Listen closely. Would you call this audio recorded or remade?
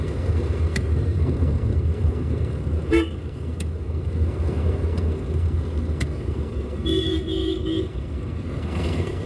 remade